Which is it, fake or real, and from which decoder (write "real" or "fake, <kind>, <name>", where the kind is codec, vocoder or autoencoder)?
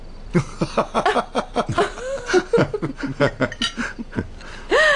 real